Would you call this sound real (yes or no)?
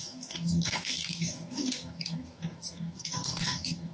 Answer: no